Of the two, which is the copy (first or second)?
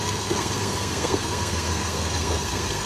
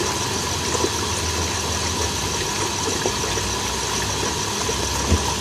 first